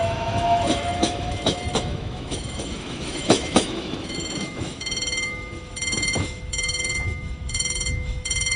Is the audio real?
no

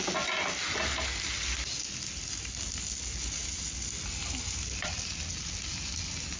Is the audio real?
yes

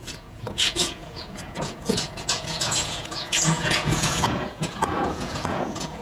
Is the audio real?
no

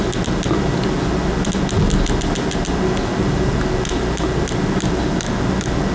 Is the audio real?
yes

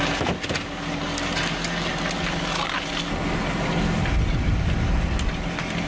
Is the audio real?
yes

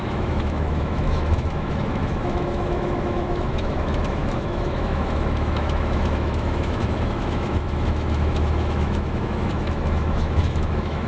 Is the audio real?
no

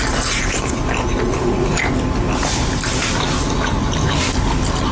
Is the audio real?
yes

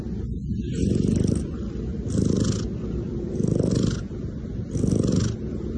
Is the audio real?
yes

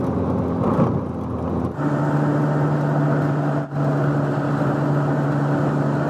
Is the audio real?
yes